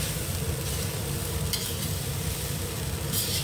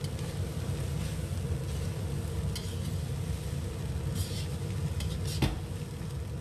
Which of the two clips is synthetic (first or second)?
first